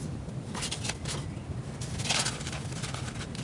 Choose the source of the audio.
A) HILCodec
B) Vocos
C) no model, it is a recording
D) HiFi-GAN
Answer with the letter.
C